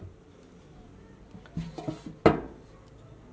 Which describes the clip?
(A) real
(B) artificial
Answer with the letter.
A